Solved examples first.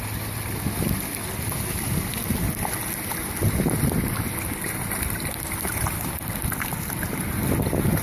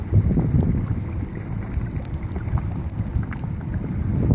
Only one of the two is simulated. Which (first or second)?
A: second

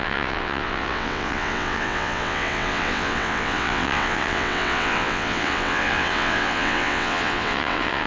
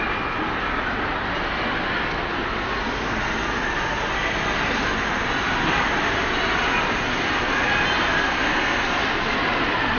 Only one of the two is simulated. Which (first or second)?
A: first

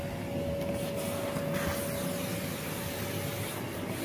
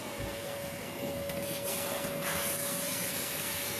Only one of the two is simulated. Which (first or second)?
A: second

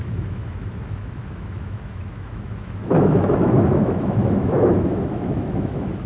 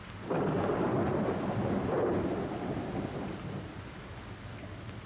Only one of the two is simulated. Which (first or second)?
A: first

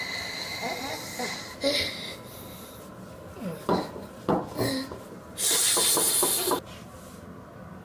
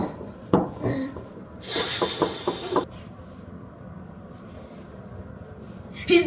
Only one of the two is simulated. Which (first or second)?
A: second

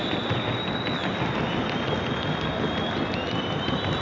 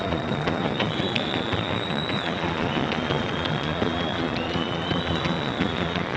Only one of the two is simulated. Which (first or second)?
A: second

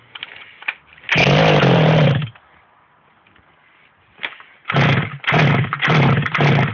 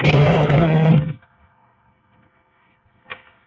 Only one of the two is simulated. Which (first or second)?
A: second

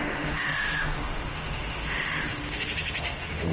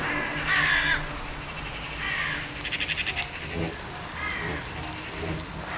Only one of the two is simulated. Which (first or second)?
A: first